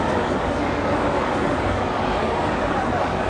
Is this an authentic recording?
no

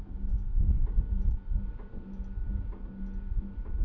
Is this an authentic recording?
yes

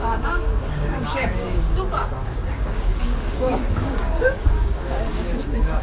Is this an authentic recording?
no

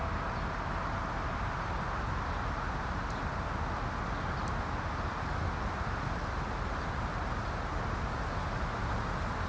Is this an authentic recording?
yes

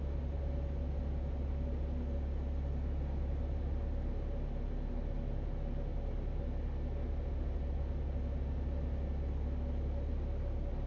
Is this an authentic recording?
yes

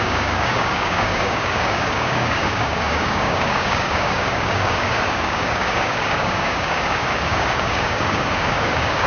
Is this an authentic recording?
no